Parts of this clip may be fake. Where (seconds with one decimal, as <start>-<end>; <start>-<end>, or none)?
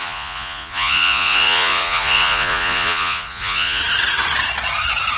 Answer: 0.0-3.8